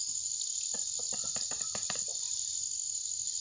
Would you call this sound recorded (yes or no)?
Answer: yes